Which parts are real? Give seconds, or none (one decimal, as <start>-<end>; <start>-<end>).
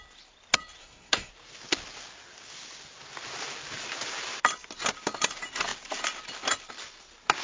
0.0-0.8; 1.3-7.4